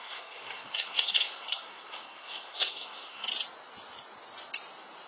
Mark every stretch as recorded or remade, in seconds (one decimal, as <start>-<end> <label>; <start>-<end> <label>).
0.0-3.3 remade; 3.3-5.1 recorded

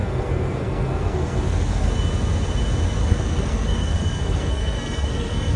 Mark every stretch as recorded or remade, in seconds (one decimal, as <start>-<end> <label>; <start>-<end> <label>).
0.0-1.9 remade; 1.9-3.0 recorded; 3.0-5.6 remade

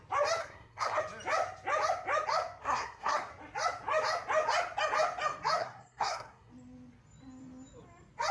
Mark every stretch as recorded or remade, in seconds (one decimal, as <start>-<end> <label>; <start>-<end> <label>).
0.0-0.4 recorded; 0.4-1.0 remade; 1.0-2.6 recorded; 2.6-3.3 remade; 3.3-5.6 recorded; 5.6-6.5 remade; 6.5-8.3 recorded

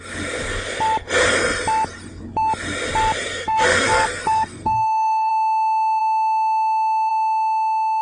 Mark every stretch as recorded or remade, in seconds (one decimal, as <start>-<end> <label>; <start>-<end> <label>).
0.0-3.2 recorded; 3.2-5.3 remade; 5.3-8.0 recorded

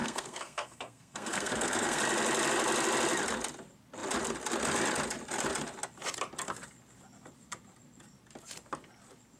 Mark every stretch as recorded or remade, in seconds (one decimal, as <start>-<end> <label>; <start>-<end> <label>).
0.0-2.0 remade; 2.0-9.4 recorded